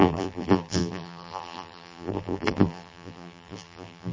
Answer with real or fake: fake